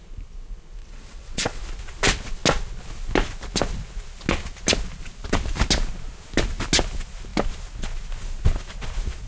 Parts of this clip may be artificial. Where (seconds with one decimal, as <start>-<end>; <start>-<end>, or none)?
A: 0.8-1.6